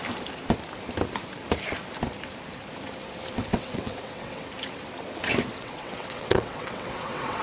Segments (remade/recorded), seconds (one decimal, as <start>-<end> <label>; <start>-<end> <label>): 0.0-3.5 recorded; 3.5-4.5 remade; 4.5-5.5 recorded; 5.5-7.4 remade